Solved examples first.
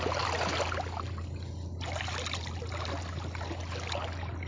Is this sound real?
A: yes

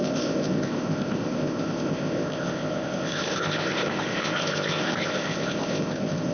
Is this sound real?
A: no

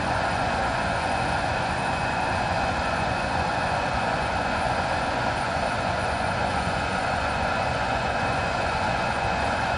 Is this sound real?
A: no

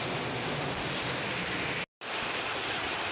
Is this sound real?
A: yes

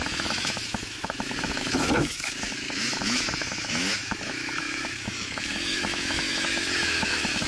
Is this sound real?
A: no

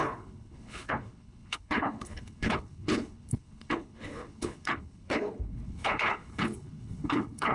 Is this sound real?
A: no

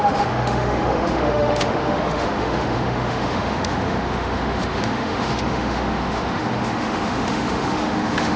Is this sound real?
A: no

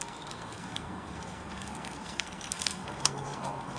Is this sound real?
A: no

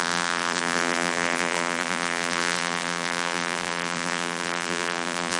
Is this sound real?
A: no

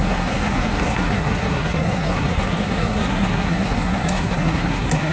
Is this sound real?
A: no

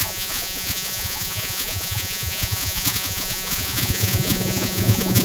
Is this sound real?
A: no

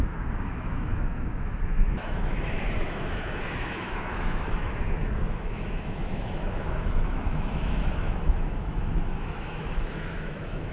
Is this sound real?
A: no